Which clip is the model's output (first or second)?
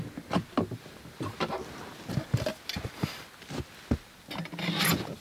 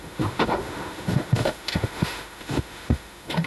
second